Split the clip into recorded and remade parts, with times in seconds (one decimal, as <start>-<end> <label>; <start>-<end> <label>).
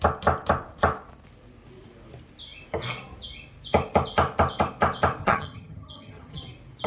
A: 0.0-5.2 recorded; 5.2-6.4 remade; 6.4-6.9 recorded